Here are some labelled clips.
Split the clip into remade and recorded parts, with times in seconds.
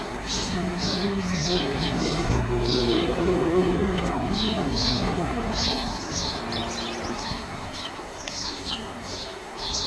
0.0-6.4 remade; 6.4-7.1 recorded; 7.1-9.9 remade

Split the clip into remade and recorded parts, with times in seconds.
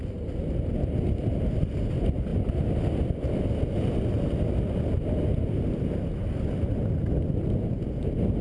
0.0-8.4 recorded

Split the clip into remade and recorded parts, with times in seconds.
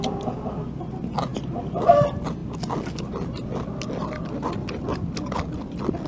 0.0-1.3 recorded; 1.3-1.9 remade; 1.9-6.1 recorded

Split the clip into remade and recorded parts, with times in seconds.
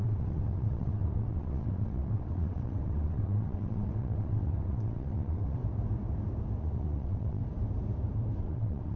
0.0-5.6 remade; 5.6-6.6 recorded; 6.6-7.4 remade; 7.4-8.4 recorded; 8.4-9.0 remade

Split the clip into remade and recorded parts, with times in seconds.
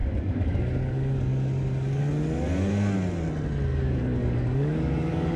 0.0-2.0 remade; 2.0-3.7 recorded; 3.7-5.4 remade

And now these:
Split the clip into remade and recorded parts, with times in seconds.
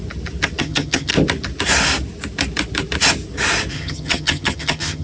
0.0-0.6 recorded; 0.6-1.1 remade; 1.1-3.7 recorded; 3.7-5.0 remade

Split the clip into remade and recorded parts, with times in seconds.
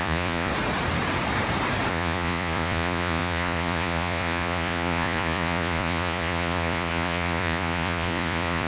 0.0-0.5 remade; 0.5-1.9 recorded; 1.9-8.7 remade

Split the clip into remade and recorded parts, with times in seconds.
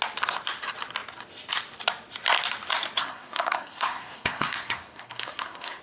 0.0-3.0 recorded; 3.0-5.8 remade